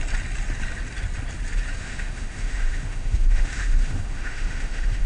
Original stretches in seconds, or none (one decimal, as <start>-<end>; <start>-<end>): 0.0-1.8